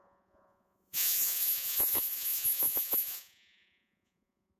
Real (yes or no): no